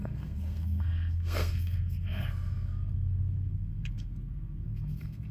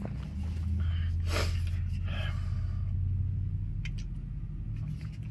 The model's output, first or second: first